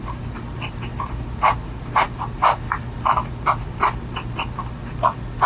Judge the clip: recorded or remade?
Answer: recorded